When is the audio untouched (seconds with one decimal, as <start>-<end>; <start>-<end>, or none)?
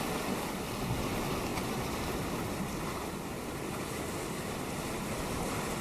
0.0-5.8